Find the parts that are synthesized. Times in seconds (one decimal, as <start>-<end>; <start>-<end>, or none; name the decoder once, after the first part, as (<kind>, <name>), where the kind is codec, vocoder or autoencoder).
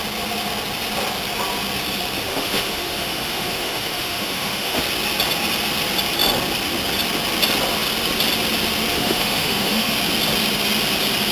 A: 2.3-4.8 (autoencoder, DAC-VAE); 9.0-9.9